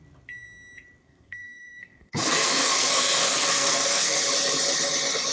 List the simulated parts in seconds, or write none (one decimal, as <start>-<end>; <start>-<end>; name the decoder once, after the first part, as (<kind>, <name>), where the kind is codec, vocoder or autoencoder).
1.0-4.2 (codec, SNAC)